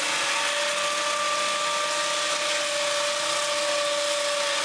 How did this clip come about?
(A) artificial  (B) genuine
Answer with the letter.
B